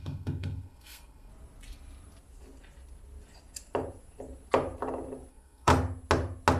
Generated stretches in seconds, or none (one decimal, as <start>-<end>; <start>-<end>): 0.0-1.3; 5.3-5.7

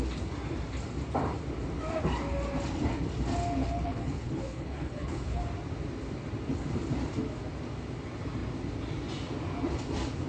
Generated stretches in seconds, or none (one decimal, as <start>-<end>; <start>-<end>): 3.6-5.4

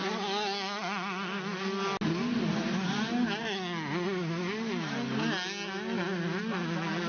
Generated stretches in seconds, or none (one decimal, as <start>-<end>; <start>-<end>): none

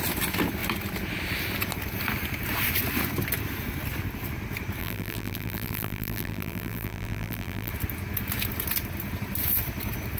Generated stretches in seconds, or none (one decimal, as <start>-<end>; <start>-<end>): 4.8-7.7

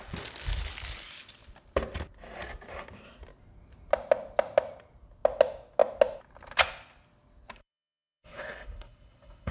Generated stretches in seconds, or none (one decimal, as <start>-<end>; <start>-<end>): 7.6-9.5

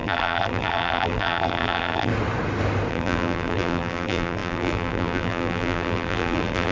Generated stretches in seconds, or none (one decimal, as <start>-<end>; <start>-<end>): 0.0-2.1; 2.9-6.7

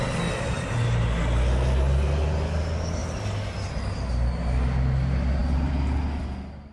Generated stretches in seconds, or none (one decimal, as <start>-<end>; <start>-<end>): none

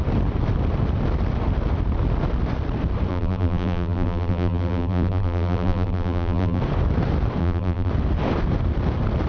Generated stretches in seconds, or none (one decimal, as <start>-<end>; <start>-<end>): 3.1-6.6; 7.4-7.9